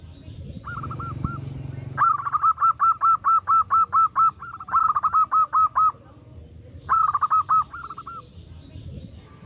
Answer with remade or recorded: recorded